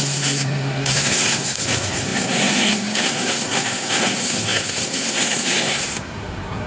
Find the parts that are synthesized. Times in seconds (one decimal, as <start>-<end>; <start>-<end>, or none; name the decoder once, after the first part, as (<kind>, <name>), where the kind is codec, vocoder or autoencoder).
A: 0.0-6.7 (codec, SNAC)